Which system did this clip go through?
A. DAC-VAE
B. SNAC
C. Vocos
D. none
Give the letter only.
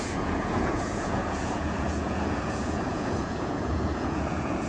C